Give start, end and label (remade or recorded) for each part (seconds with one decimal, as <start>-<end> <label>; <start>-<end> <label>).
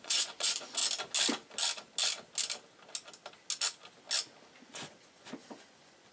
0.0-0.8 remade; 0.8-4.5 recorded; 4.5-6.1 remade